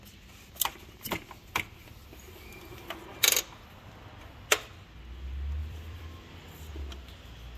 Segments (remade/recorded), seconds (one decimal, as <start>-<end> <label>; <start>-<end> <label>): 0.0-2.0 recorded; 2.0-2.5 remade; 2.5-5.6 recorded; 5.6-6.3 remade; 6.3-7.6 recorded